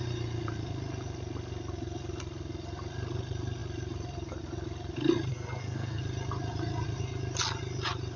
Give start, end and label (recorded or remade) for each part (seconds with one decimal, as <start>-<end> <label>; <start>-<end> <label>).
0.0-5.3 recorded; 5.3-6.0 remade; 6.0-8.2 recorded

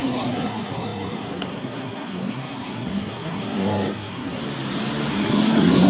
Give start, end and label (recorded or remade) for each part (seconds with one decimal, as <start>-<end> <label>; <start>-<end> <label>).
0.0-4.4 remade; 4.4-5.1 recorded; 5.1-5.9 remade